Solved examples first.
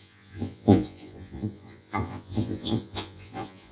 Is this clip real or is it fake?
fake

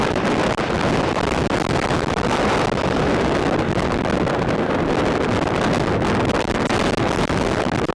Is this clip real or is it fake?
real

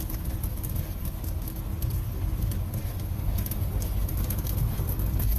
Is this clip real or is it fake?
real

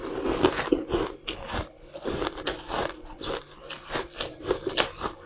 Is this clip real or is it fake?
real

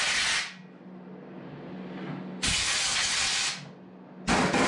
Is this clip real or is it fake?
real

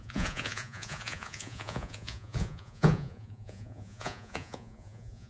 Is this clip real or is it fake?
fake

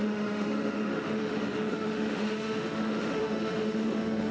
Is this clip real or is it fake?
fake